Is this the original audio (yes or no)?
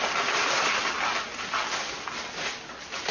yes